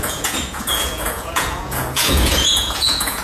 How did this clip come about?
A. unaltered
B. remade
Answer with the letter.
B